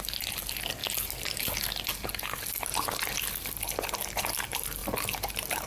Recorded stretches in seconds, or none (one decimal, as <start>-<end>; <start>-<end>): 0.0-5.7